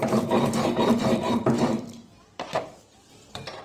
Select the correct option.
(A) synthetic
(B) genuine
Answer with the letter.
A